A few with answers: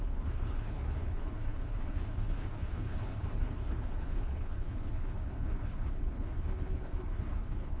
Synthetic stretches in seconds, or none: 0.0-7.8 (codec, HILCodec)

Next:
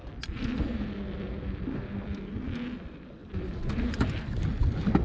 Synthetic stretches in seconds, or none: 0.0-1.9 (vocoder, BigVGAN v2); 3.2-4.2

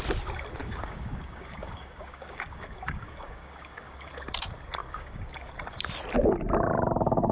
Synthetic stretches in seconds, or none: 0.6-4.1 (codec, DAC); 4.8-5.5

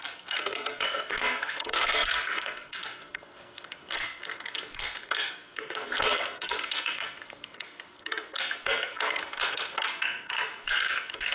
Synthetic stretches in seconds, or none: 0.0-11.3 (codec, SNAC)

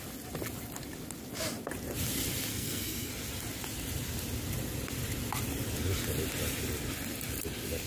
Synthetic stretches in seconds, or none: 2.5-3.1 (codec, SNAC)